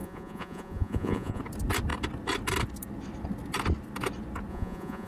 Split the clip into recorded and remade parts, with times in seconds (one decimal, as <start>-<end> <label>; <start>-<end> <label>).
0.0-1.4 remade; 1.4-4.5 recorded; 4.5-5.1 remade